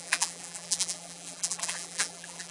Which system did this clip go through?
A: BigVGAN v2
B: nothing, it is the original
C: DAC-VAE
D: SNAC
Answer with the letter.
A